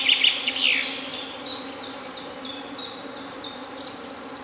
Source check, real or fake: real